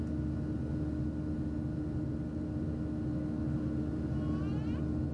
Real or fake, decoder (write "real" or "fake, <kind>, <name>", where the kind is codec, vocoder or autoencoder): real